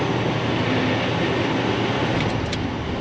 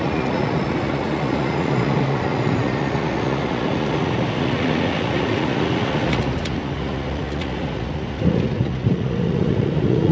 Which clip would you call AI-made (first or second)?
second